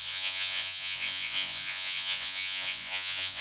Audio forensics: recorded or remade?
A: remade